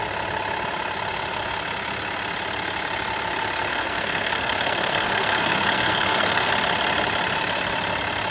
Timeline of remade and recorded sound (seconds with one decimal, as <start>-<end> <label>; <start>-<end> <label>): 0.0-3.7 recorded; 3.7-6.5 remade; 6.5-8.3 recorded